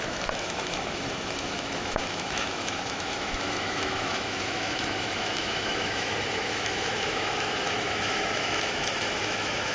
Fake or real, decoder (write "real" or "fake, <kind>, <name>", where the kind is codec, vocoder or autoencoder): fake, autoencoder, DAC-VAE